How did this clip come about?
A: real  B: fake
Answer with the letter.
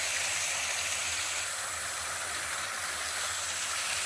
A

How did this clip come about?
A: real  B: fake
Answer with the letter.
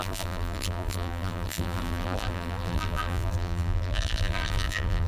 B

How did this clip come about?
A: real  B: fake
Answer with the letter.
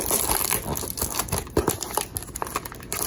A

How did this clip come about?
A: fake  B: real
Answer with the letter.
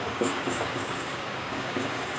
A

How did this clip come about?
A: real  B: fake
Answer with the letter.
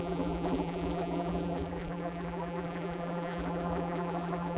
B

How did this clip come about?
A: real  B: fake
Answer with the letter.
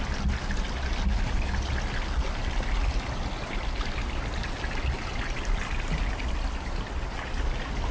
A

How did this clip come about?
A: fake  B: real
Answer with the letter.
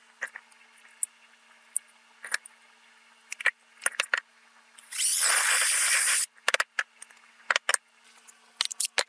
B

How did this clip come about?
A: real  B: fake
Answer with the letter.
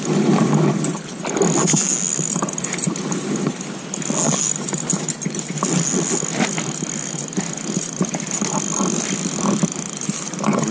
A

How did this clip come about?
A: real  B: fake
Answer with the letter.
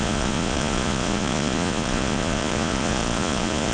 B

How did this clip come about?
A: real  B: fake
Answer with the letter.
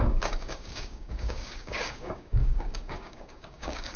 B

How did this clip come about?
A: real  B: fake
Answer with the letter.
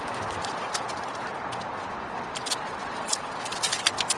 A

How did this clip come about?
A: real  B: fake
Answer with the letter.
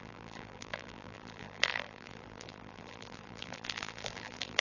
B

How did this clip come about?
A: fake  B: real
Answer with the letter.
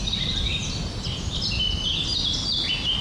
B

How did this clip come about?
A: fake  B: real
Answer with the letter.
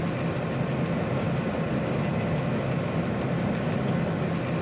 B